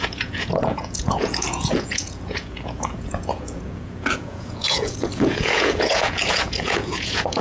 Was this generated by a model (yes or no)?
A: yes